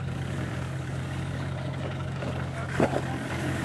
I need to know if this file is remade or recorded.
remade